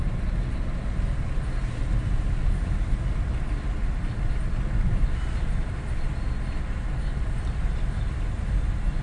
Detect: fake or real real